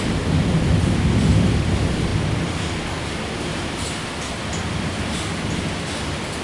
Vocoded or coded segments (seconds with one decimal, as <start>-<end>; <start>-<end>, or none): none